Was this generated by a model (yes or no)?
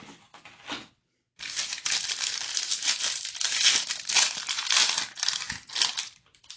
no